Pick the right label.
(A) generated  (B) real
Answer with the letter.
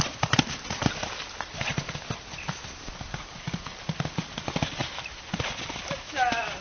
A